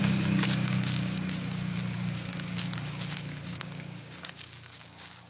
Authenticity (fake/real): fake